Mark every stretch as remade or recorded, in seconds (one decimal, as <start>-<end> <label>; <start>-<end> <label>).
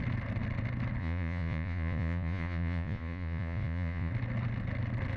0.0-1.0 recorded; 1.0-4.1 remade; 4.1-5.2 recorded